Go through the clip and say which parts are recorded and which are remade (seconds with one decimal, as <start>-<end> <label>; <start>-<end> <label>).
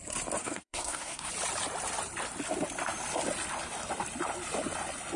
0.0-0.4 recorded; 0.4-1.3 remade; 1.3-5.2 recorded